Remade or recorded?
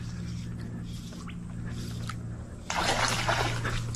recorded